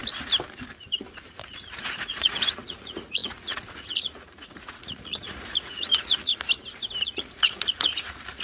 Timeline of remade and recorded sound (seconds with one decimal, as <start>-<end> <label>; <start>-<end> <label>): 0.0-1.3 recorded; 1.3-6.3 remade; 6.3-7.0 recorded; 7.0-8.4 remade